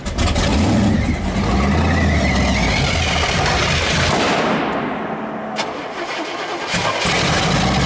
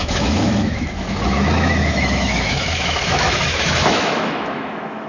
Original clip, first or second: first